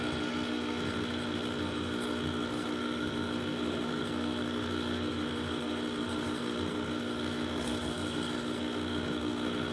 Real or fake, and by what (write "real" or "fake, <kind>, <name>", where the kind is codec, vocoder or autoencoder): fake, codec, SNAC